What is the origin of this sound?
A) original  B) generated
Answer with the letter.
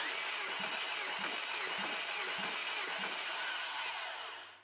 A